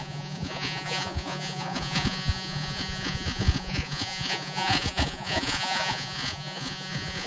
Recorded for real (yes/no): no